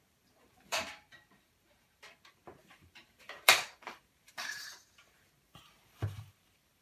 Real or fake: fake